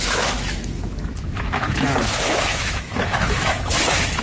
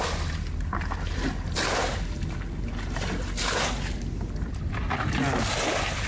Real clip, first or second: second